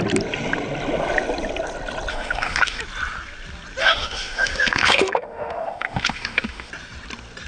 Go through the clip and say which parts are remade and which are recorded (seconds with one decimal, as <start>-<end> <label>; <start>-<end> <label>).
0.0-2.1 recorded; 2.1-2.8 remade; 2.8-3.8 recorded; 3.8-6.7 remade; 6.7-7.5 recorded